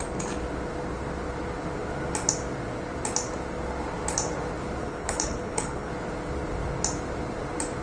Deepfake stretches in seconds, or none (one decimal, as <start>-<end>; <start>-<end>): 4.8-5.9